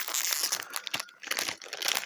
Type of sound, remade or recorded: recorded